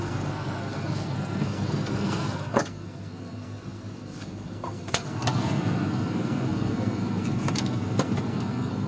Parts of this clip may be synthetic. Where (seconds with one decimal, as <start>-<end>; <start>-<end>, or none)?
0.0-8.9